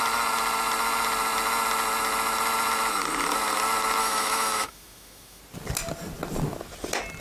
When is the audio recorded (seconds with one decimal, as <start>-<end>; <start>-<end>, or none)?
0.0-4.0; 5.4-7.2